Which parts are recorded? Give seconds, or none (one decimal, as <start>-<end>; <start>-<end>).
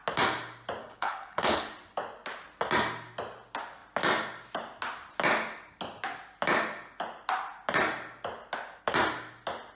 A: 0.0-0.8; 1.7-9.7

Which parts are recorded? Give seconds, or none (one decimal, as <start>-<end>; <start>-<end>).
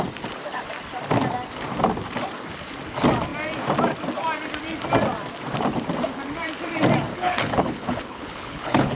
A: 0.0-7.1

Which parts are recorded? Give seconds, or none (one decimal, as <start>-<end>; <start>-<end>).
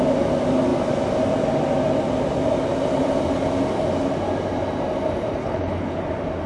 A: 0.0-5.4; 6.0-6.5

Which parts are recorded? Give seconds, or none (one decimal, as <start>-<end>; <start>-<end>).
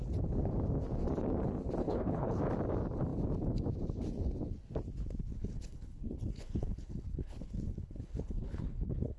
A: 0.0-1.8; 2.4-5.2